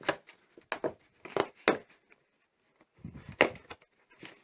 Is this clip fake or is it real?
real